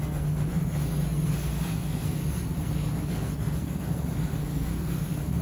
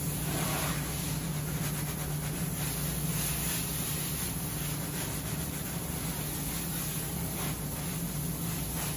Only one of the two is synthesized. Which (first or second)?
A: first